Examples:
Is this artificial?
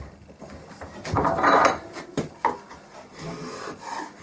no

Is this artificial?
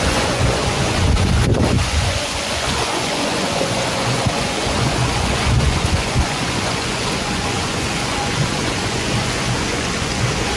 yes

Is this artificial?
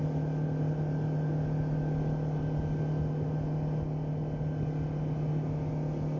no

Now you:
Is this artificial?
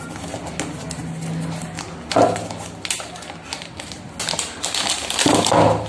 no